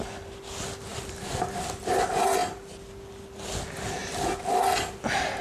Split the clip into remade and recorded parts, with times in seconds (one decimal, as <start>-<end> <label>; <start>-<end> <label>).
0.0-0.9 recorded; 0.9-1.8 remade; 1.8-2.4 recorded; 2.4-2.9 remade; 2.9-5.4 recorded